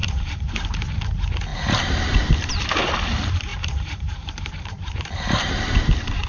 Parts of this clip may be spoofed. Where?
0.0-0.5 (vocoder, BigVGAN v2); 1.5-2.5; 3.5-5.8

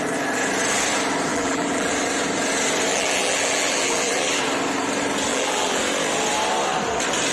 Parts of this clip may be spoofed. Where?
1.3-1.9 (vocoder, BigVGAN v2); 2.9-4.4; 5.3-5.8

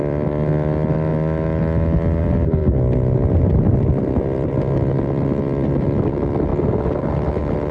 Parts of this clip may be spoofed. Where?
0.0-1.1 (vocoder, BigVGAN v2); 2.2-2.6; 3.4-6.5; 7.1-7.7

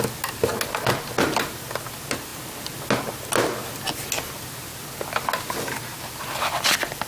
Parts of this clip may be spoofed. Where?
none

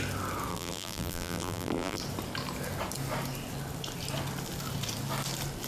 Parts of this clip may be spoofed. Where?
0.5-2.0 (vocoder, BigVGAN v2)

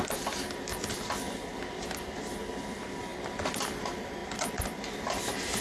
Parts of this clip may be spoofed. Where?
0.0-4.2 (vocoder, BigVGAN v2); 5.0-5.6

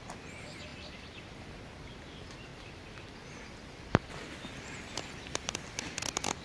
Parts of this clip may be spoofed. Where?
0.0-6.4 (vocoder, BigVGAN v2)

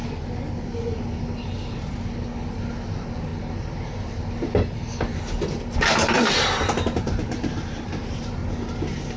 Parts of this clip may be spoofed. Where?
2.9-3.3 (vocoder, BigVGAN v2); 6.3-8.4